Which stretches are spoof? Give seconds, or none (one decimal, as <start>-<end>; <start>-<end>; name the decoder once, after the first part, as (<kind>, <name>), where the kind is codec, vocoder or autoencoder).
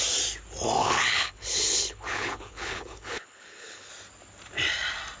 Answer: 0.8-3.9 (codec, HILCodec)